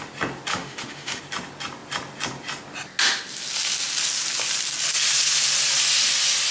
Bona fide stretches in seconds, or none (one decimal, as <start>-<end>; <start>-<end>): 0.0-0.5; 1.2-6.5